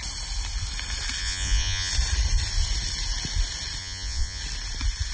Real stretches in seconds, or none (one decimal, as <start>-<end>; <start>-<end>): 0.0-1.2; 1.9-3.8; 4.4-5.1